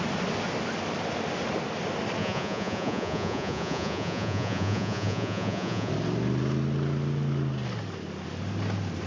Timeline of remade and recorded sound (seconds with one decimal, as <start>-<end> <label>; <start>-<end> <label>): 0.0-2.2 recorded; 2.2-5.9 remade; 5.9-9.1 recorded